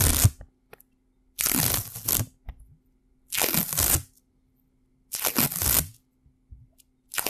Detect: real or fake real